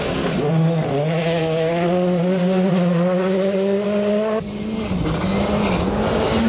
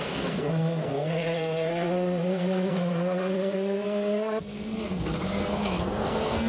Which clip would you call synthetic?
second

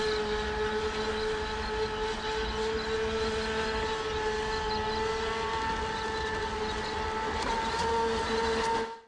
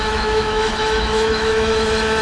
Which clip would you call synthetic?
second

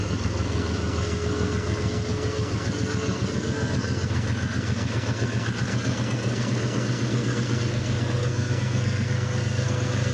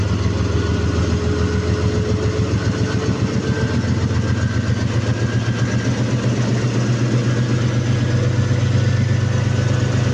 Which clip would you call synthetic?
first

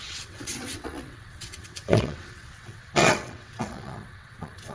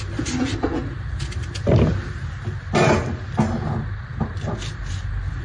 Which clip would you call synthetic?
first